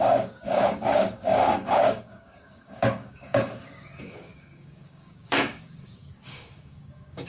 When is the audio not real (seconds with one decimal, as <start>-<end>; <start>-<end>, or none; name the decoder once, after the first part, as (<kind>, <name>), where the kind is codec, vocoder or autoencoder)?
0.0-7.3 (codec, DAC)